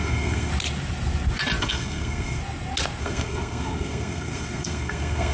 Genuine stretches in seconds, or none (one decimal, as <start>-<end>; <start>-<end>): 0.5-1.6; 2.4-3.0